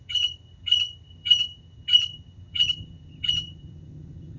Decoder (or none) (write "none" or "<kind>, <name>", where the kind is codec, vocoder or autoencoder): vocoder, HiFi-GAN